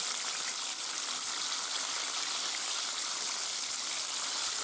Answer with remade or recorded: recorded